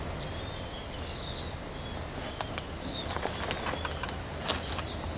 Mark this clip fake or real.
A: real